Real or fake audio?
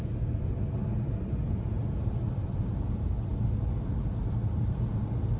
real